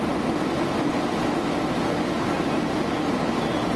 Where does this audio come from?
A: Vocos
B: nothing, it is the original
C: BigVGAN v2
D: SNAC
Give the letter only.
B